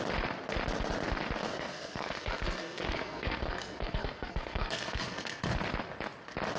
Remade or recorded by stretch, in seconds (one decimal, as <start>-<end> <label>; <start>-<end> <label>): 0.0-1.4 recorded; 1.4-5.4 remade; 5.4-6.6 recorded